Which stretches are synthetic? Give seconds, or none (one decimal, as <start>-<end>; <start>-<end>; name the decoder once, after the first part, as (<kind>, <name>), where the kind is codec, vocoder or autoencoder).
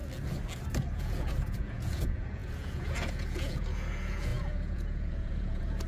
0.9-5.9 (vocoder, Vocos)